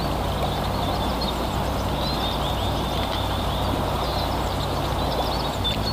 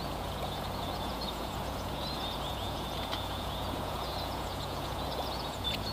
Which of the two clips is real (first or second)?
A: first